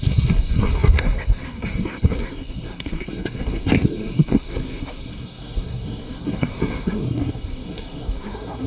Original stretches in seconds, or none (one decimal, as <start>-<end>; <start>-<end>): none